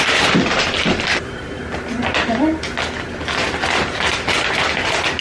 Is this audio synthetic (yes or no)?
no